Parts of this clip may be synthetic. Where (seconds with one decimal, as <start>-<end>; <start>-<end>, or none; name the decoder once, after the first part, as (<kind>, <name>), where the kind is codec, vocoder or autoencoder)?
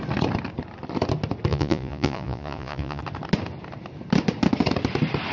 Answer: 1.5-3.0 (vocoder, Vocos)